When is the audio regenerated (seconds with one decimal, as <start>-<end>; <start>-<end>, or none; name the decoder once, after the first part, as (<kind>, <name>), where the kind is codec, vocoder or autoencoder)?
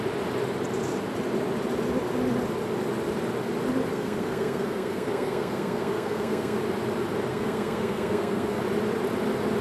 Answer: 3.9-6.6 (codec, SNAC); 7.3-8.6